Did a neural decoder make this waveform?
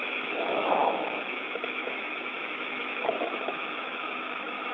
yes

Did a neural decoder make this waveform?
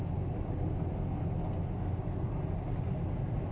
no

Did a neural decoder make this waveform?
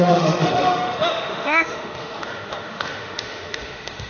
yes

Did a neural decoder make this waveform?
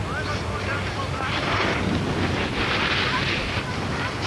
no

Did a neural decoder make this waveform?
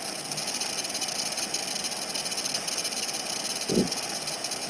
no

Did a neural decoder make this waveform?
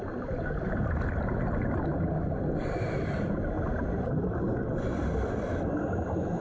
no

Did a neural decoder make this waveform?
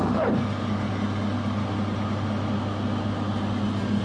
no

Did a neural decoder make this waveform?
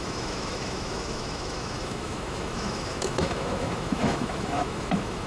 yes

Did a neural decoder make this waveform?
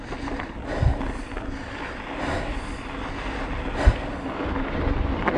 no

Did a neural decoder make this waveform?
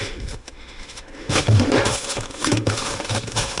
yes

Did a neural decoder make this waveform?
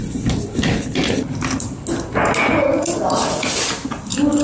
no